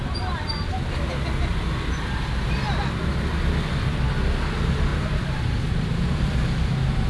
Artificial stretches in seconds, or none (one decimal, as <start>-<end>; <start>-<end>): 1.5-3.0; 4.9-5.4